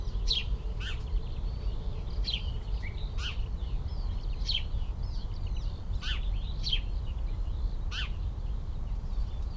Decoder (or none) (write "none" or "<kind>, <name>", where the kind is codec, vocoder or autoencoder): vocoder, BigVGAN v2